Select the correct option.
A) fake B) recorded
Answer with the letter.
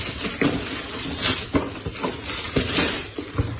B